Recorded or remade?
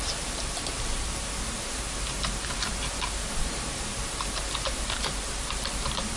remade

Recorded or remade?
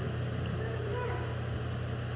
recorded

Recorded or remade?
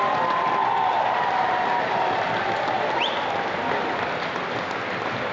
recorded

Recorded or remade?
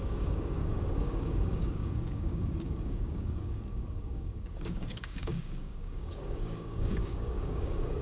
remade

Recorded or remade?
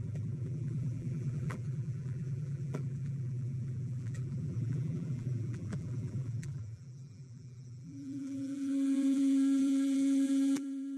remade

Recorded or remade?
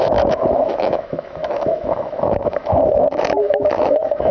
remade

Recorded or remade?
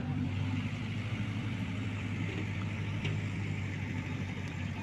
remade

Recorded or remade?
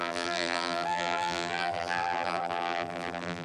remade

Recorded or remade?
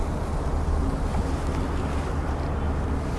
recorded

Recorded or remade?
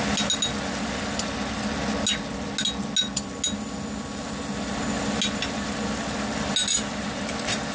recorded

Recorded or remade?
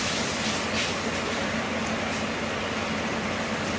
recorded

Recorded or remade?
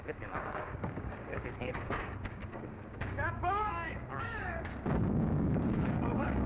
remade